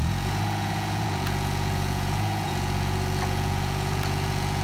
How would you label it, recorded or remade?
remade